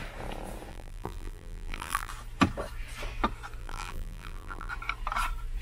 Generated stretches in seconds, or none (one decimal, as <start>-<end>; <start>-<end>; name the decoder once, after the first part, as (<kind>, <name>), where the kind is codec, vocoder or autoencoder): 0.7-2.1 (vocoder, BigVGAN v2); 3.6-4.7